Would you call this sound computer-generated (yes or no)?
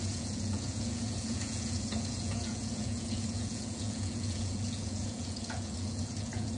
yes